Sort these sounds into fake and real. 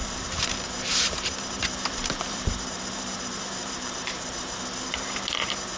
fake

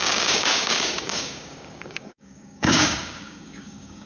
fake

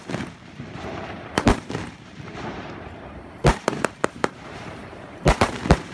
fake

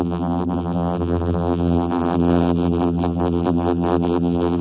fake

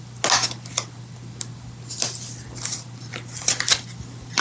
real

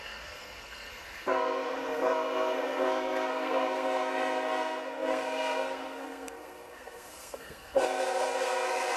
fake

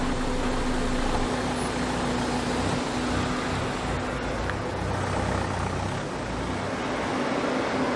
real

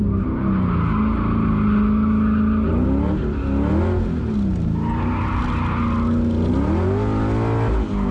real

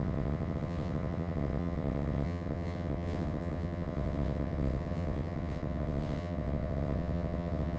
fake